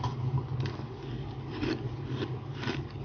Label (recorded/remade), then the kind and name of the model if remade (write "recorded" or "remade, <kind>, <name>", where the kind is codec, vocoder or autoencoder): remade, codec, DAC